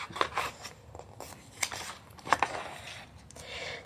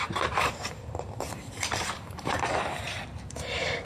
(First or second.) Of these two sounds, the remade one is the second